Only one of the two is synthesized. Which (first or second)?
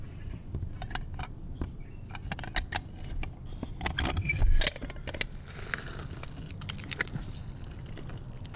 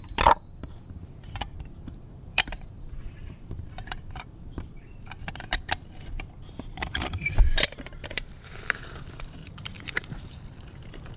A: second